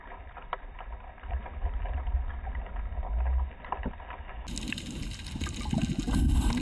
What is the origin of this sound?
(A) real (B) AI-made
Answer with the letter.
A